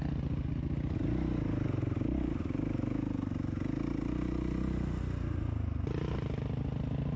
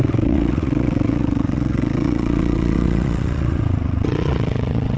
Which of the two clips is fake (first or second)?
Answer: second